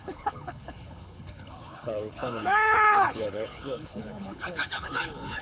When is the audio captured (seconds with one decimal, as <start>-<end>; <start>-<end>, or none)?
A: none

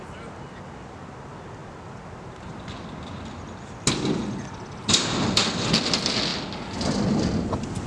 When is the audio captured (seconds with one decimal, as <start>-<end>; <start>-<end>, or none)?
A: 0.0-7.9

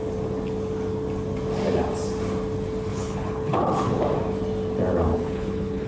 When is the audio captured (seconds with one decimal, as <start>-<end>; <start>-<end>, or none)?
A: 0.0-2.9; 3.9-5.1

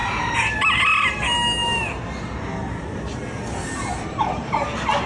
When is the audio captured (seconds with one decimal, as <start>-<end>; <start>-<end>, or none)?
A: 0.0-5.1

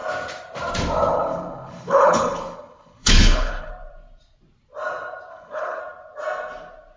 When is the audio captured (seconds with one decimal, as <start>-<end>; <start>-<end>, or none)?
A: 0.0-1.1; 3.7-5.3; 5.8-7.0

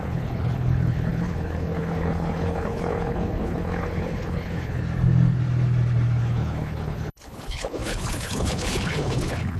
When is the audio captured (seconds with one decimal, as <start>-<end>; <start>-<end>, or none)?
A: 4.8-6.2

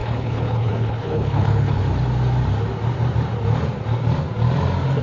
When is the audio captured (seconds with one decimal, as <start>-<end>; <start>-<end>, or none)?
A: 1.8-5.0